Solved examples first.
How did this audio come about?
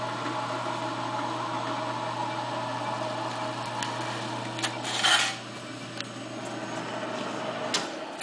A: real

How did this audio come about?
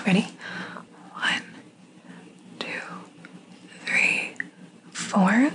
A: real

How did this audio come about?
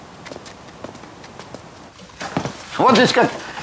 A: real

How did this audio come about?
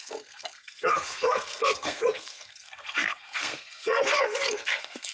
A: fake